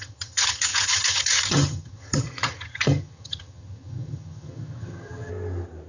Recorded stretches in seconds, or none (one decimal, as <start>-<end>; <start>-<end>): 5.3-5.9